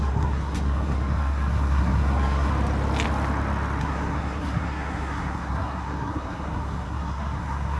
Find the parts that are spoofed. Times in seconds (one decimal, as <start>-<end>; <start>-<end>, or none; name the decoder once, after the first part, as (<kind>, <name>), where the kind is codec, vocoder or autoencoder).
0.0-2.5 (codec, SNAC); 3.8-7.8